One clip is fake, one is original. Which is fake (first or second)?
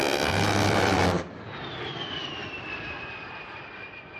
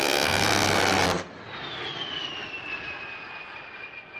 first